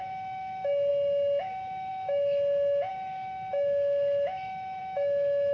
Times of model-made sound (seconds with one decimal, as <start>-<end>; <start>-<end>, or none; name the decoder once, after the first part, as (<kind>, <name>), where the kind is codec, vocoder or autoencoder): 0.0-5.5 (autoencoder, DAC-VAE)